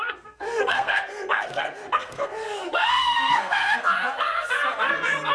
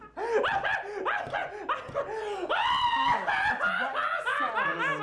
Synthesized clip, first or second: first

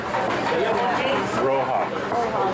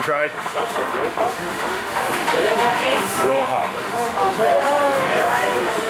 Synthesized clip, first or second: second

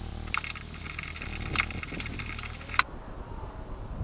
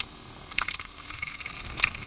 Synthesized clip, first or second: second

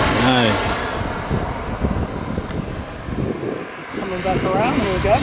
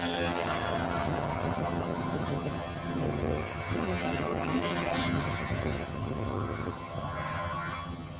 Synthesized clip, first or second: second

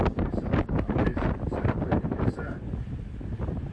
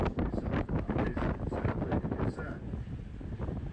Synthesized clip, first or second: first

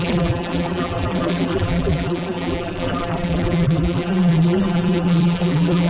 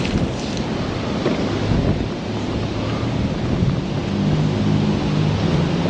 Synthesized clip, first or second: first